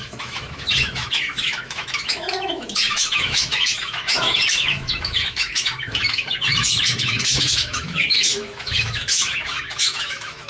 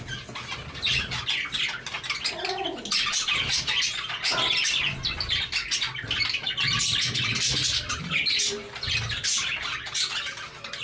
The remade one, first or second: first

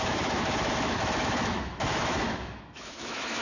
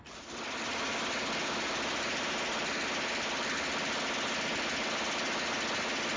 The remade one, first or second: first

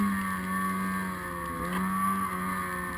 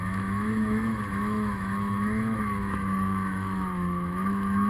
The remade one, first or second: second